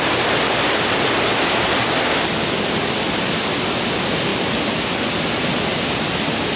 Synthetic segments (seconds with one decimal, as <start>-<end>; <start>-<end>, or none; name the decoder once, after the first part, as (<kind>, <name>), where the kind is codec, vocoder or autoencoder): none